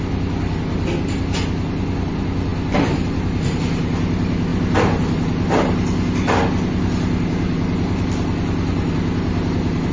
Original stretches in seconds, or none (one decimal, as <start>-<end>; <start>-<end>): 0.0-9.9